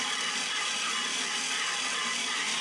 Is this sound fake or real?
real